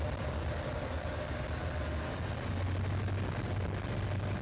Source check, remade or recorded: recorded